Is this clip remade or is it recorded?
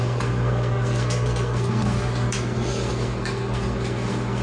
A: remade